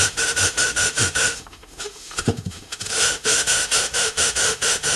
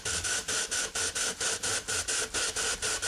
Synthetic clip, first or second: first